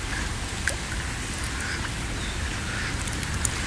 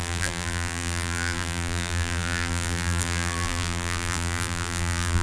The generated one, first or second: second